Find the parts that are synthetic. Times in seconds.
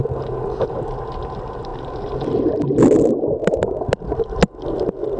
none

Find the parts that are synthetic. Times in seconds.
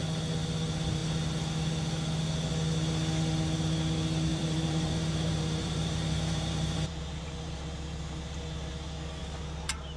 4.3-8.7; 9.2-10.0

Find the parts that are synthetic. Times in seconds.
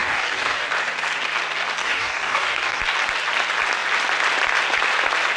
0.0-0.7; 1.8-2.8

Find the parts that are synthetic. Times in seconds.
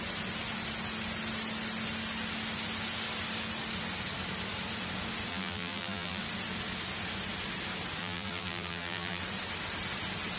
5.3-6.2; 8.0-9.2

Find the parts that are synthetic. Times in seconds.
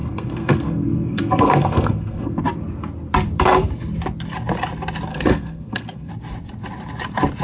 0.0-2.4; 5.1-6.1